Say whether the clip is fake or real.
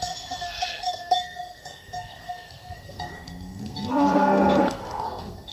fake